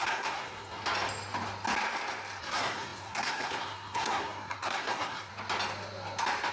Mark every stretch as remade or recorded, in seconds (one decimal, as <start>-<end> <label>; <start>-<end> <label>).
0.0-0.8 remade; 0.8-2.4 recorded; 2.4-5.3 remade; 5.3-6.5 recorded